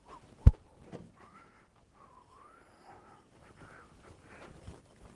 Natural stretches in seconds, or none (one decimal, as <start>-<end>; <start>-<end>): 0.0-5.2